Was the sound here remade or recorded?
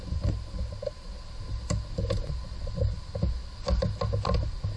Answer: recorded